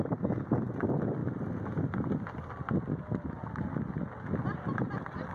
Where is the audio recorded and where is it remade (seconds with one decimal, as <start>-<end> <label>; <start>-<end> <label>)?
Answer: 0.0-5.3 recorded